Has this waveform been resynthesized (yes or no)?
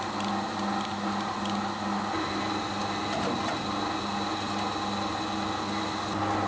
no